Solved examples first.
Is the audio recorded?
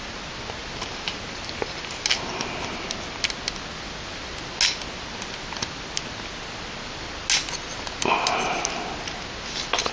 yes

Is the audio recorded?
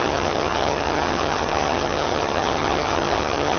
no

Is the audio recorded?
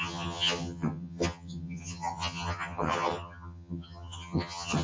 no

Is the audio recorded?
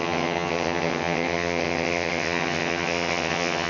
no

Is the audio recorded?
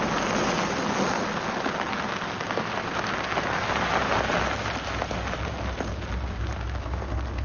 yes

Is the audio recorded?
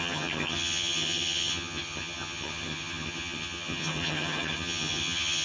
no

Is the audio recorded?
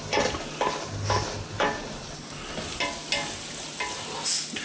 yes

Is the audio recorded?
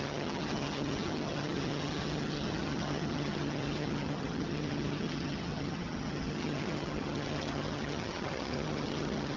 no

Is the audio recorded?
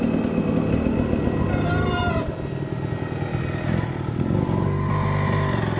yes